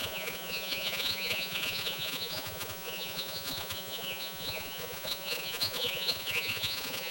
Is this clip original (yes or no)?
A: no